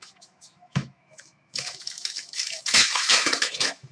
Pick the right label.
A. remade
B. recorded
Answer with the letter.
A